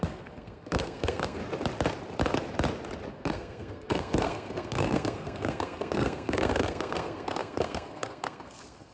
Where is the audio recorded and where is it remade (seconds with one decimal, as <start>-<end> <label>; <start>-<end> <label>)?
0.0-1.4 remade; 1.4-3.1 recorded; 3.1-8.9 remade